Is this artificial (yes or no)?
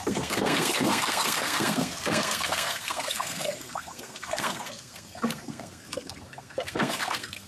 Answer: yes